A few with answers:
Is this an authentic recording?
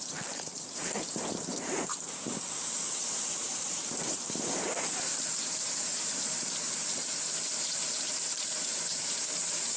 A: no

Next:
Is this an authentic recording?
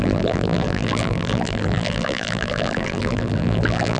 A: no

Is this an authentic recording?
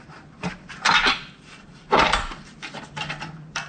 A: no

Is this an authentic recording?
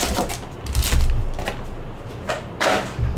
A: yes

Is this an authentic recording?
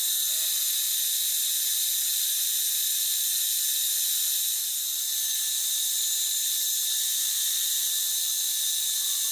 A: no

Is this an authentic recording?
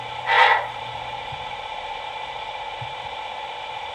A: no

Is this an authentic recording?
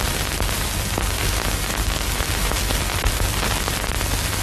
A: yes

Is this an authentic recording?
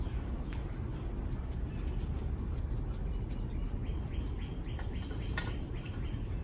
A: yes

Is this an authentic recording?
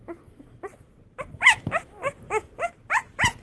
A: yes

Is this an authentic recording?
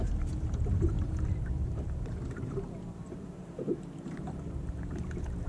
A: no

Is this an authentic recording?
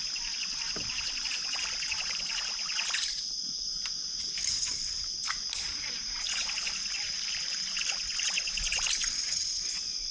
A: yes